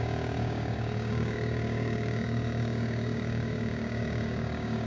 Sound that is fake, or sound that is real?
fake